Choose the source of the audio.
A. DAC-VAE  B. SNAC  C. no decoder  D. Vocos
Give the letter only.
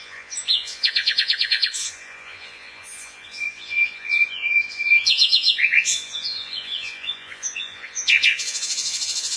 D